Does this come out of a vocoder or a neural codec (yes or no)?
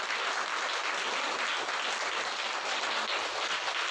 no